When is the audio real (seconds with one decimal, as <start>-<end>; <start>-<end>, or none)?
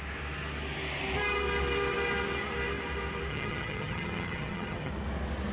0.0-3.3; 4.9-5.5